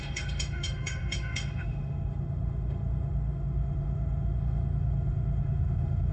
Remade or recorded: remade